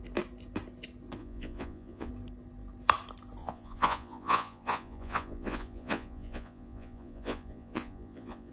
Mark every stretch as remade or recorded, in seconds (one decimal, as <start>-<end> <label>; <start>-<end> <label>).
0.0-1.2 recorded; 1.2-2.1 remade; 2.1-3.4 recorded; 3.4-8.5 remade